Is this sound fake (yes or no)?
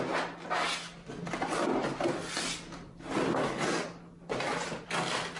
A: no